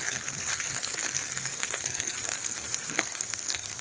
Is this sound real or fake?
fake